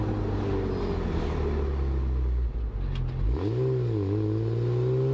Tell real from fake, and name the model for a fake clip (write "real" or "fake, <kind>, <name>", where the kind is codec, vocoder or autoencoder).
real